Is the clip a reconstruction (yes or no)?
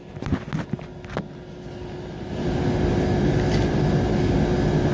no